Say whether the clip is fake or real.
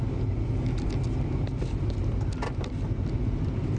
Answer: real